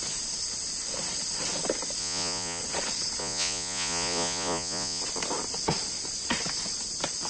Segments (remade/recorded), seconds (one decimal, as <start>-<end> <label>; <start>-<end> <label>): 0.0-2.0 recorded; 2.0-2.6 remade; 2.6-3.2 recorded; 3.2-5.0 remade; 5.0-7.3 recorded